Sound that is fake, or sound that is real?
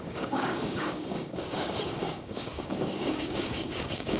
fake